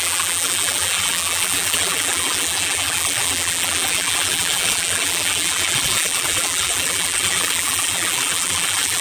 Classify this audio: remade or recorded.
remade